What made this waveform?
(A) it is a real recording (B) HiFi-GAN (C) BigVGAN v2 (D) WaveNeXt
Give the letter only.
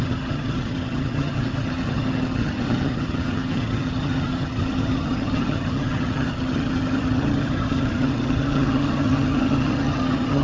B